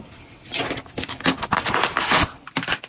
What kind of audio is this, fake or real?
real